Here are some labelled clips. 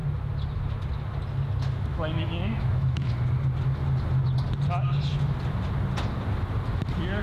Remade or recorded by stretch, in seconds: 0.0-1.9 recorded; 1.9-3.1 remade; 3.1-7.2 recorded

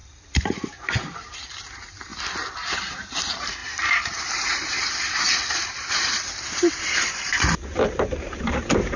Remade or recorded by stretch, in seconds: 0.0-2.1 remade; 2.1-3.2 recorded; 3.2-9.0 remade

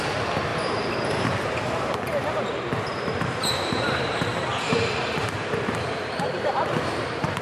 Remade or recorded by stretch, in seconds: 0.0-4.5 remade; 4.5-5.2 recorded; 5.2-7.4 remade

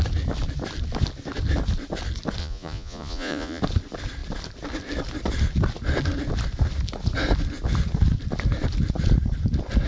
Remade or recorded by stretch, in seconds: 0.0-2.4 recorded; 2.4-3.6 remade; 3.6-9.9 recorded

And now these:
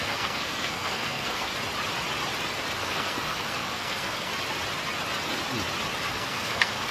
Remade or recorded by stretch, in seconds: 0.0-1.5 remade; 1.5-2.8 recorded; 2.8-4.3 remade; 4.3-6.1 recorded; 6.1-6.9 remade

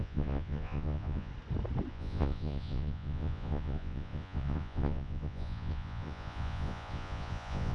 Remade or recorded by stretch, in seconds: 0.0-1.3 remade; 1.3-1.9 recorded; 1.9-7.7 remade